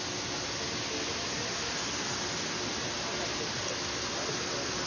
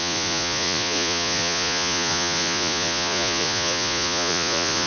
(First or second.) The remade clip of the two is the second